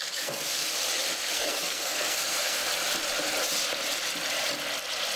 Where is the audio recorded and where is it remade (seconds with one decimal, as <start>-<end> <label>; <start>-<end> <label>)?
0.0-0.7 remade; 0.7-1.3 recorded; 1.3-2.7 remade; 2.7-5.2 recorded